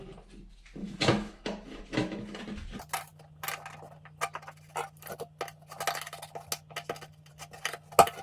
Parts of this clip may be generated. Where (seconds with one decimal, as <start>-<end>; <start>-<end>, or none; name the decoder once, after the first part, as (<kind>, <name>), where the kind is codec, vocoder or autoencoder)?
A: 0.8-2.4 (autoencoder, DAC-VAE)

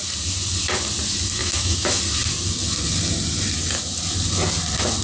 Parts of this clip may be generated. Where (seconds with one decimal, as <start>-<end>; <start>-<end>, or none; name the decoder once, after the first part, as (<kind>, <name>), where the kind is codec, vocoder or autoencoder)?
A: 1.4-2.0 (autoencoder, DAC-VAE)

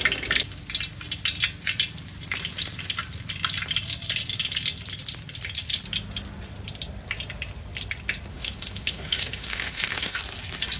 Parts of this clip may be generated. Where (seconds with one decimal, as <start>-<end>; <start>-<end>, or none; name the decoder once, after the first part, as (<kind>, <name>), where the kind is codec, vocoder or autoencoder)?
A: 8.3-10.2 (autoencoder, DAC-VAE)

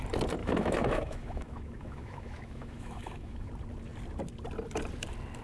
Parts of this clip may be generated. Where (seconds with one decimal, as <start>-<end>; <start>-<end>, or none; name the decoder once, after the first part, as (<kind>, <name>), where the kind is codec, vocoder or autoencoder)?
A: 0.4-3.5 (autoencoder, DAC-VAE)

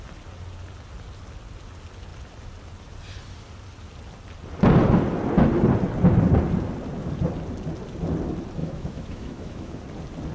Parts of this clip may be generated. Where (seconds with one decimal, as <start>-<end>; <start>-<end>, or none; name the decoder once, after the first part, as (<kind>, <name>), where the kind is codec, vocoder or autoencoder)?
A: 8.6-9.8 (autoencoder, DAC-VAE)

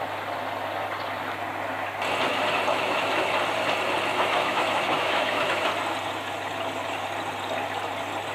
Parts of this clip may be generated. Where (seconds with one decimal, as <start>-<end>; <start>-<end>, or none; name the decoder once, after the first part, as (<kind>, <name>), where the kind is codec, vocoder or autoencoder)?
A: 2.7-3.3 (autoencoder, DAC-VAE); 4.1-5.7